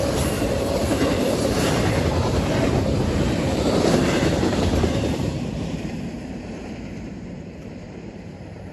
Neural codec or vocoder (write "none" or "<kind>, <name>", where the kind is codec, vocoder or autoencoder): vocoder, BigVGAN v2